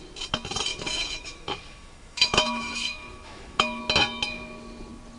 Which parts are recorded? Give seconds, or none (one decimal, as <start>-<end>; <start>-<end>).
0.0-0.7; 3.8-5.2